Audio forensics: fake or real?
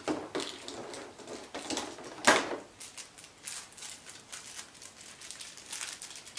real